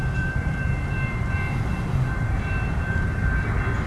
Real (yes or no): no